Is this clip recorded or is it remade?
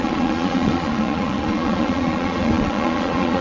remade